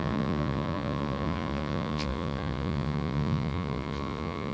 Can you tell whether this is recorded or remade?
remade